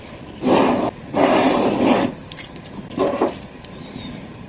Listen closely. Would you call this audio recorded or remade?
recorded